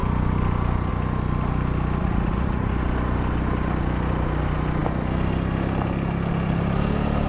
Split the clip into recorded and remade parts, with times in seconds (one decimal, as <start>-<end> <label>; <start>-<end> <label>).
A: 0.0-2.0 recorded; 2.0-2.7 remade; 2.7-7.3 recorded